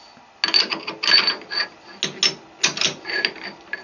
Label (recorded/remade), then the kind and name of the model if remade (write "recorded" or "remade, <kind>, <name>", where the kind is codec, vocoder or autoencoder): recorded